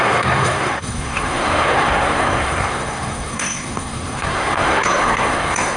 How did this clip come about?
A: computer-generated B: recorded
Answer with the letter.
A